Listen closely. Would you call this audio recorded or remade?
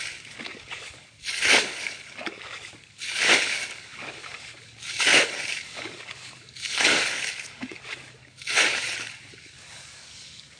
remade